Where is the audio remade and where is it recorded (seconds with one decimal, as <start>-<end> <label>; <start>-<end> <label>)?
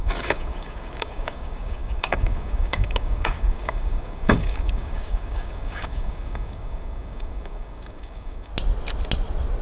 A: 0.0-8.5 remade; 8.5-9.6 recorded